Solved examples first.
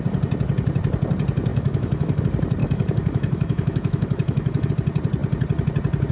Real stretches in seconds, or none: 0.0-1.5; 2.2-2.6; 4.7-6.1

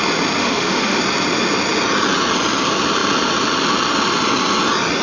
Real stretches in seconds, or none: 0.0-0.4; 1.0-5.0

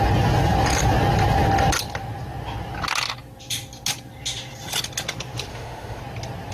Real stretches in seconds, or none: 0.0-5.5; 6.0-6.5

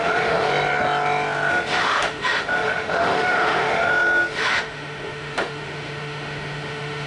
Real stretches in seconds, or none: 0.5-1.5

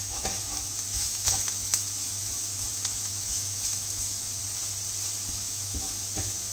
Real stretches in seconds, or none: 4.4-5.3

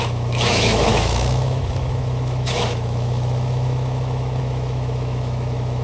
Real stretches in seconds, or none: none